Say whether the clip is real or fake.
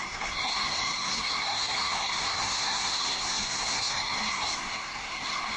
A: fake